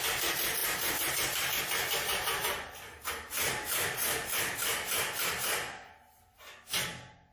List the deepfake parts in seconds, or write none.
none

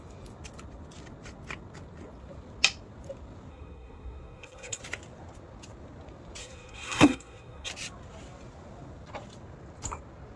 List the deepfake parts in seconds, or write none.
3.5-4.8; 6.4-7.7

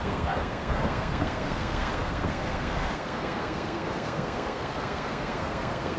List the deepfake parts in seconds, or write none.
0.0-6.0

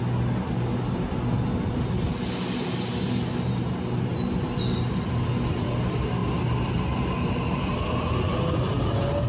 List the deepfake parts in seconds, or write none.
none